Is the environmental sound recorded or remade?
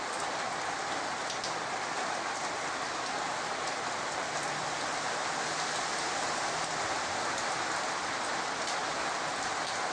recorded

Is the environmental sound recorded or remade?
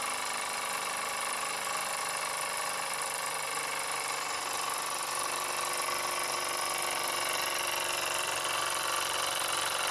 recorded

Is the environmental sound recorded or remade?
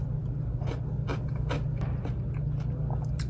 recorded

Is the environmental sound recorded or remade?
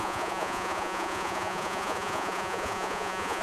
remade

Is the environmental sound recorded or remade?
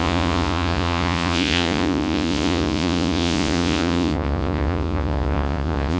remade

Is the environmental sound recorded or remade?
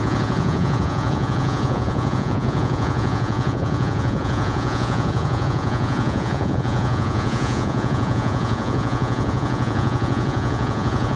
remade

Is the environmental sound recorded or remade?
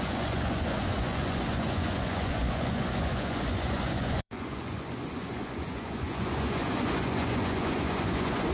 remade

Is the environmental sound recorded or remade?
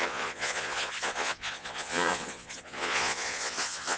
remade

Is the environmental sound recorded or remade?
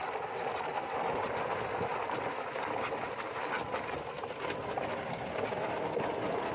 recorded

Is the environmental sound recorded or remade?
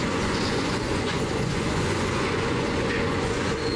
remade